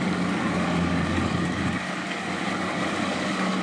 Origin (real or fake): fake